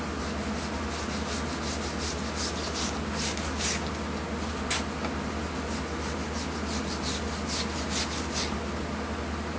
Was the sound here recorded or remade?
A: recorded